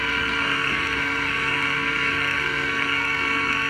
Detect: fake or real fake